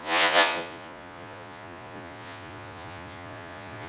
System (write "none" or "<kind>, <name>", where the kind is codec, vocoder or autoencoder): vocoder, Vocos